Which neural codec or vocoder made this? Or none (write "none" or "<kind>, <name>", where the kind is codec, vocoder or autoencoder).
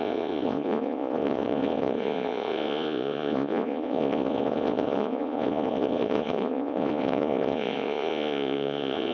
vocoder, Vocos